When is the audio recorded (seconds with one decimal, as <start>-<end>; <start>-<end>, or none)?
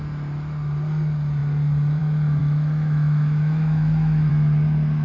0.0-2.4; 4.3-5.0